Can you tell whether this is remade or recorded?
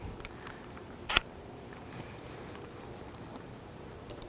remade